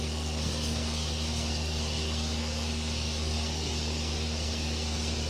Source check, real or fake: fake